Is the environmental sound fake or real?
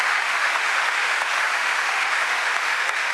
fake